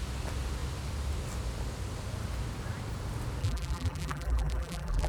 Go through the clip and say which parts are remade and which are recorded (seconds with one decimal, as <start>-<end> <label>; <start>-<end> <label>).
0.0-3.4 recorded; 3.4-5.1 remade